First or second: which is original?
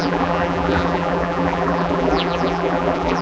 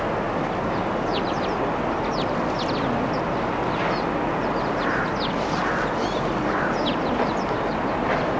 second